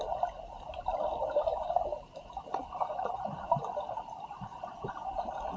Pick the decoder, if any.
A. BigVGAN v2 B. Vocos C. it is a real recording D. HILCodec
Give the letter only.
A